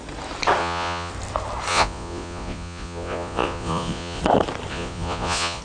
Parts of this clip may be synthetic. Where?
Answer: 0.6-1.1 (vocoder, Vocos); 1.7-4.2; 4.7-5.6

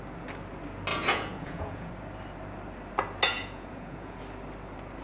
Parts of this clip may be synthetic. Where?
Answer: 0.9-1.9 (vocoder, Vocos); 3.3-4.2

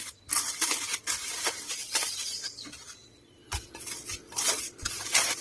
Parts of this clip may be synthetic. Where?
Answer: 1.8-5.0 (vocoder, Vocos)

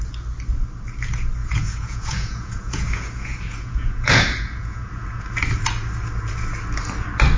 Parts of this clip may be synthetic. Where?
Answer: 1.4-5.2 (vocoder, Vocos)

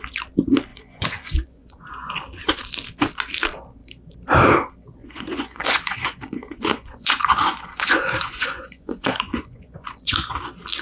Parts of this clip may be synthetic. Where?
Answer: 0.7-2.1 (vocoder, Vocos); 5.0-10.3